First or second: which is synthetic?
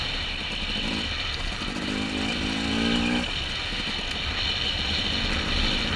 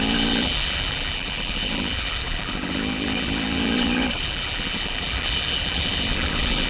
second